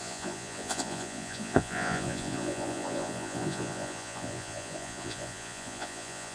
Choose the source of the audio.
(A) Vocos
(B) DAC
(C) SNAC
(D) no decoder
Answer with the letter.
A